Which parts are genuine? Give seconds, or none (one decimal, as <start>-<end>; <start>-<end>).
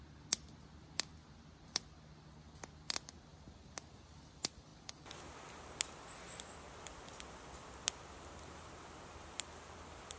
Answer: 0.0-10.2